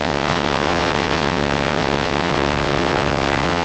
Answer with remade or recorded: remade